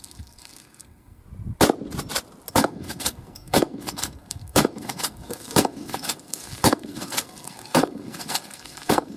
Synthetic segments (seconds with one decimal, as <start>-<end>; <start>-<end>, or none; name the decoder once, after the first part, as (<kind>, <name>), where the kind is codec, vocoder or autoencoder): 0.0-1.2 (codec, SNAC); 2.5-9.2